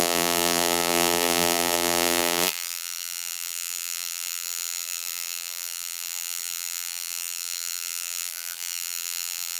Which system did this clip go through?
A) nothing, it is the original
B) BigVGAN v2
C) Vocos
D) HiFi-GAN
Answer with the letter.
B